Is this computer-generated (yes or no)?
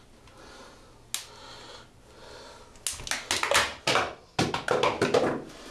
no